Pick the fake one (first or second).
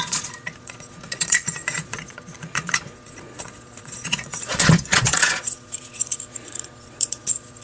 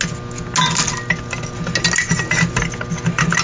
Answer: first